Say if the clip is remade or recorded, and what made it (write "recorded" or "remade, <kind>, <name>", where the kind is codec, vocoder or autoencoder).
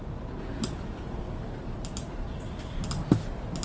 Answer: recorded